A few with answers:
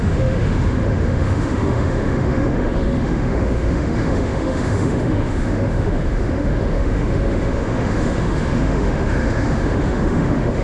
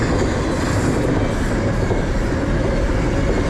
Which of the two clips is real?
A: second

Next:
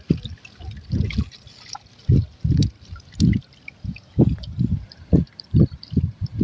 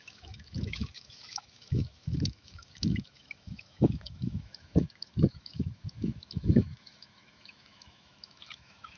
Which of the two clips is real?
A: first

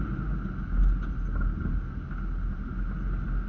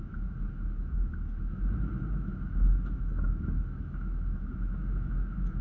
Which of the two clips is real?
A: first